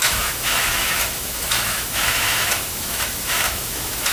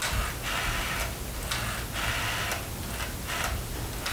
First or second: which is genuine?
second